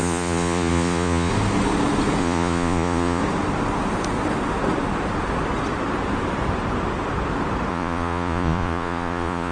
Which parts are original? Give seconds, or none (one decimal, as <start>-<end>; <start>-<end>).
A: 1.3-2.2; 3.2-7.7